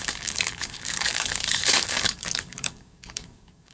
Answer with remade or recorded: remade